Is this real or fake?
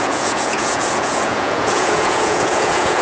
fake